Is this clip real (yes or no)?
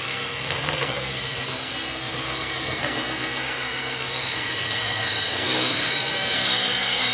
no